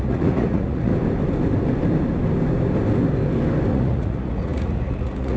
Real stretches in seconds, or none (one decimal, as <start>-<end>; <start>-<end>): 0.9-3.7